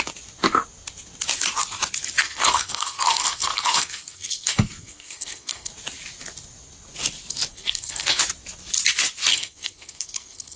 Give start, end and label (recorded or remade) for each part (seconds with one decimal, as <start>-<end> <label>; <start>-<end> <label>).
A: 0.0-2.2 recorded; 2.2-5.7 remade; 5.7-7.5 recorded; 7.5-8.2 remade; 8.2-9.3 recorded; 9.3-10.6 remade